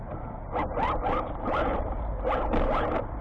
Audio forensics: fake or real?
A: fake